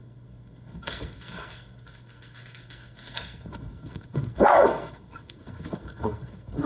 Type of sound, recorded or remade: remade